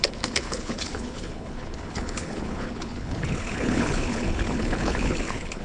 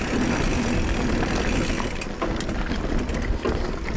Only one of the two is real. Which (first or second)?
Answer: second